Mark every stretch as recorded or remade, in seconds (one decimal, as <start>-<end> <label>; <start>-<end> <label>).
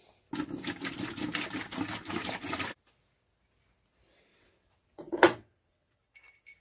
0.0-4.3 recorded; 4.3-6.0 remade; 6.0-6.6 recorded